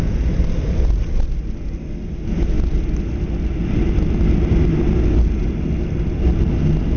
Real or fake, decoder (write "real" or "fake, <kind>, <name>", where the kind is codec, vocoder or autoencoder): real